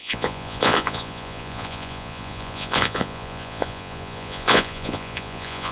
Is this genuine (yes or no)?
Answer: no